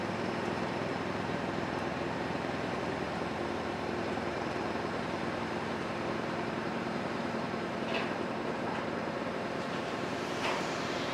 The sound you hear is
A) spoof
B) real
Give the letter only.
A